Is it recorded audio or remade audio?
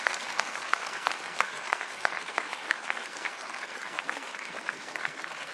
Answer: remade